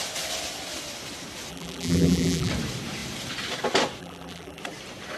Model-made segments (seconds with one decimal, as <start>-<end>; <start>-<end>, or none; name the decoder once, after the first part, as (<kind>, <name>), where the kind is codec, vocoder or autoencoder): 1.5-2.5 (vocoder, BigVGAN v2); 4.0-4.6